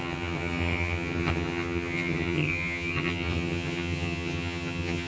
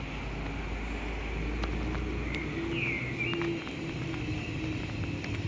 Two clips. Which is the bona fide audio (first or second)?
second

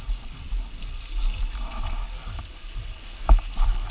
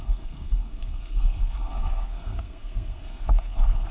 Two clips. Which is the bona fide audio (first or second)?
first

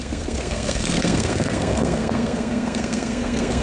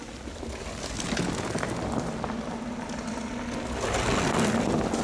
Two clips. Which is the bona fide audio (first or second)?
second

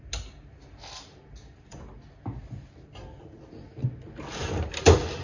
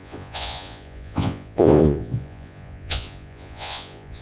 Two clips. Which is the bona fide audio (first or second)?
first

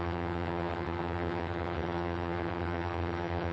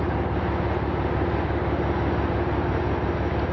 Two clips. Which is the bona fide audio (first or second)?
second